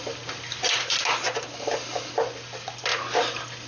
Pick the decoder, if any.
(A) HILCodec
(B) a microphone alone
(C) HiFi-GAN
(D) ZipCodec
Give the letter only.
B